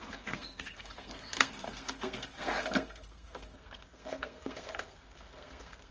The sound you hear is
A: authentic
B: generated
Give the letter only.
B